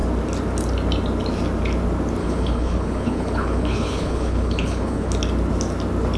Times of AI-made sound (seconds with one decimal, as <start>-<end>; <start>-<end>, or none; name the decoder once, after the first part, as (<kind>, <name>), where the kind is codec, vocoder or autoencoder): 2.2-5.1 (codec, HILCodec)